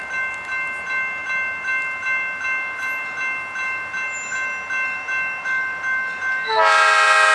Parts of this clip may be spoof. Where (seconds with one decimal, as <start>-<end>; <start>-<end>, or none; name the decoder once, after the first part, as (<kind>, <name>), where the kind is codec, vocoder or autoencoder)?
none